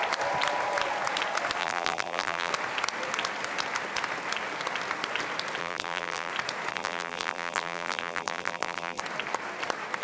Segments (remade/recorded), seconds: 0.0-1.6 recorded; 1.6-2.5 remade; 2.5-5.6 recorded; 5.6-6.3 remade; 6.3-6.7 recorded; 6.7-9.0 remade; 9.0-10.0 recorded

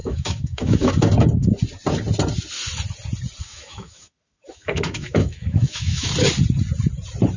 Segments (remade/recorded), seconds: 0.0-0.9 remade; 0.9-3.4 recorded; 3.4-6.1 remade; 6.1-7.4 recorded

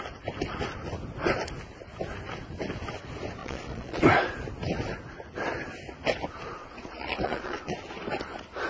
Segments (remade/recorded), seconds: 0.0-3.4 recorded; 3.4-4.0 remade; 4.0-6.6 recorded; 6.6-7.7 remade; 7.7-8.7 recorded